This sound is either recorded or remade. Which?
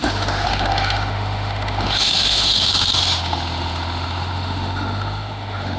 remade